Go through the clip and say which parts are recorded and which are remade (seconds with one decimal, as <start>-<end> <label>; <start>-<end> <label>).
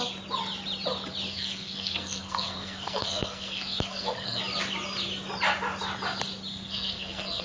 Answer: 0.0-1.3 recorded; 1.3-4.4 remade; 4.4-6.5 recorded; 6.5-7.4 remade